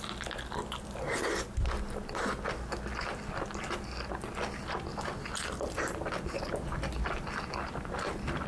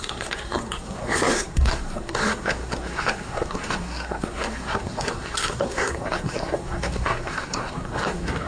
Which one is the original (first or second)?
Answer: first